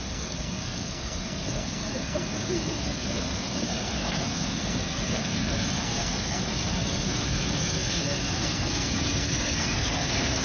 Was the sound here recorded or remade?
remade